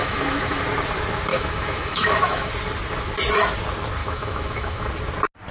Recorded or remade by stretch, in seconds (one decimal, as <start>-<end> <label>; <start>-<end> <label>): 0.0-0.6 remade; 0.6-1.3 recorded; 1.3-2.5 remade; 2.5-4.0 recorded; 4.0-4.9 remade; 4.9-5.5 recorded